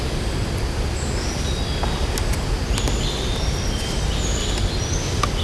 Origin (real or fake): real